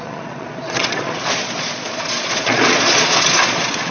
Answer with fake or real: fake